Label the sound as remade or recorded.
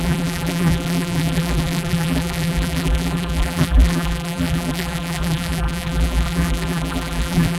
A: remade